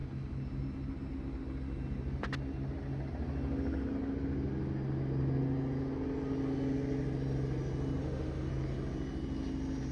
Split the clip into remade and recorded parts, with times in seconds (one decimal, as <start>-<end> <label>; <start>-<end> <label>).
0.0-8.0 recorded; 8.0-8.5 remade; 8.5-9.9 recorded